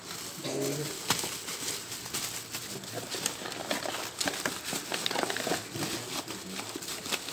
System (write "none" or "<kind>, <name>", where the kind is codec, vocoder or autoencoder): none